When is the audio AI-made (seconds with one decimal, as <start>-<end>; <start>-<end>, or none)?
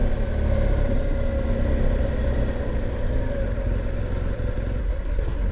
4.8-5.5